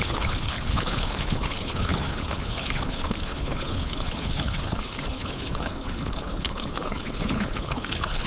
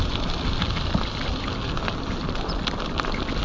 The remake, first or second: first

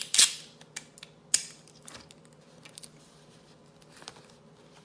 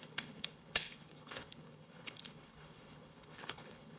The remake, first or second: second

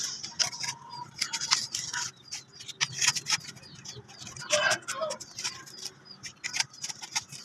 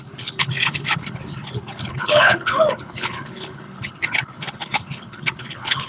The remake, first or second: second